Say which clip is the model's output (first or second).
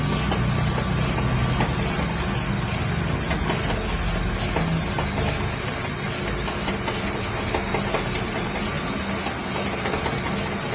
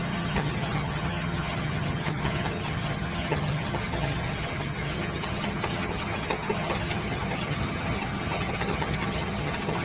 second